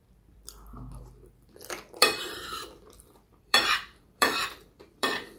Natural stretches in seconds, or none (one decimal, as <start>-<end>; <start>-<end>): 0.0-2.0